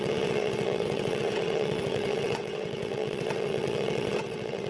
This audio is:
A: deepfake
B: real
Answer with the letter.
A